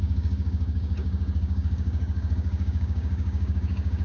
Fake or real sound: fake